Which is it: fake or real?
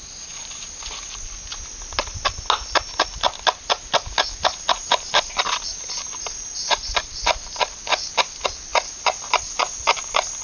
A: real